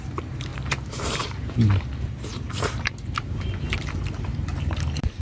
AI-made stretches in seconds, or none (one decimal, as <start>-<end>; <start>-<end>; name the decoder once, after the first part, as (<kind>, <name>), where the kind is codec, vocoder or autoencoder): 0.0-5.2 (vocoder, BigVGAN v2)